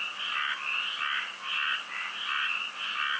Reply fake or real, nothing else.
real